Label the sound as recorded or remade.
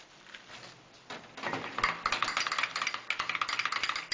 recorded